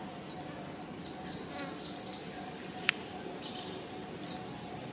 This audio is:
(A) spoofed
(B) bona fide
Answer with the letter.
B